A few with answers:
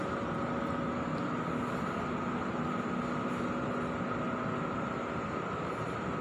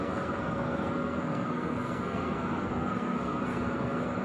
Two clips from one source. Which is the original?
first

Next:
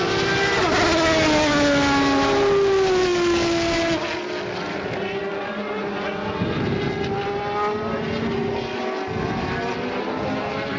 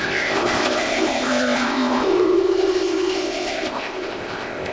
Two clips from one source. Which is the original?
first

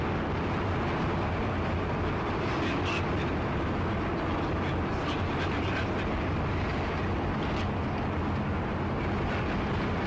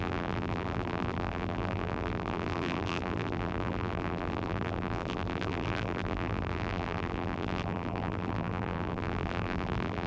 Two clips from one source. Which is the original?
first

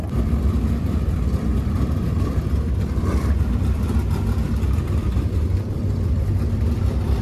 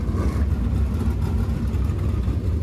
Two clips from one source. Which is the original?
second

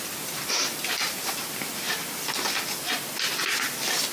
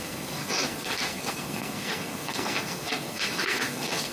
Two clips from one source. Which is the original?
first